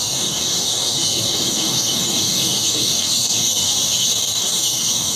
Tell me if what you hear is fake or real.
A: fake